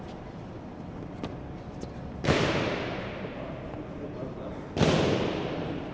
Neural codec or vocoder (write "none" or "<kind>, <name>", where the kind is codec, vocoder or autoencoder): vocoder, BigVGAN v2